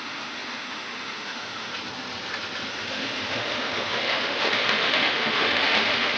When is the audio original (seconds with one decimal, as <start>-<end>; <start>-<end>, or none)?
1.7-2.7